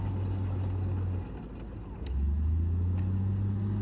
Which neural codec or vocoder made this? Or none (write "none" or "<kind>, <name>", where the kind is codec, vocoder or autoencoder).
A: none